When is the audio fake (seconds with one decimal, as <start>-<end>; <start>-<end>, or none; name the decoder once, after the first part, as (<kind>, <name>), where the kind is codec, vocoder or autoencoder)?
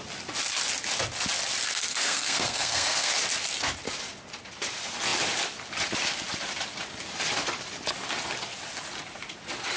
1.9-3.1 (codec, SNAC)